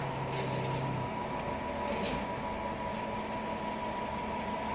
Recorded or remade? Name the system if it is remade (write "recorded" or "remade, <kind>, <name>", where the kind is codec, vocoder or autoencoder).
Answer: recorded